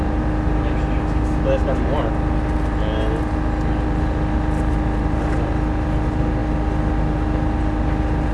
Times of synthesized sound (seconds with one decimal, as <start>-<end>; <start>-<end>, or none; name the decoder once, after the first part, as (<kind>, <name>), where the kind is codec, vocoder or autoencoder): none